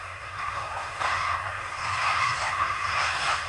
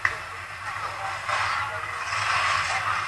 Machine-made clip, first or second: first